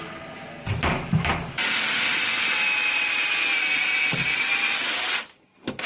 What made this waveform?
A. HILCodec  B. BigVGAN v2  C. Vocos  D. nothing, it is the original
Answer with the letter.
D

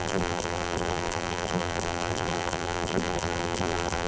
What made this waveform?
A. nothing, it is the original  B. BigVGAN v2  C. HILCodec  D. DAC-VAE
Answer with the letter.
B